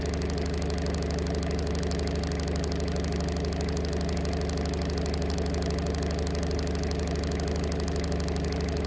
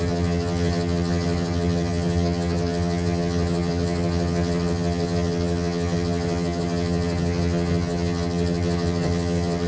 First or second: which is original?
first